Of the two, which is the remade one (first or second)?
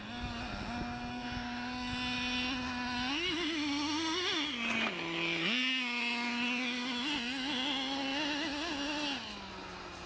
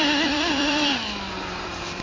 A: second